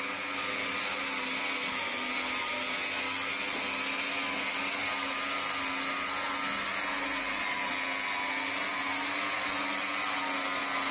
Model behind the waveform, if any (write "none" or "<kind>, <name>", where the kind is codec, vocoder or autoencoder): none